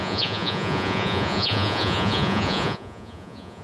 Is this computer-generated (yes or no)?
yes